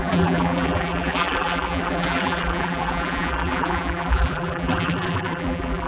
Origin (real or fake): fake